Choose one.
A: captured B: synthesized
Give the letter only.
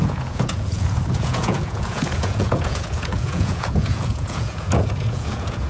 B